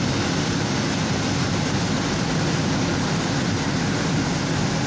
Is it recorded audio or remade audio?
recorded